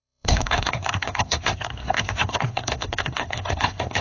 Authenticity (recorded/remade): remade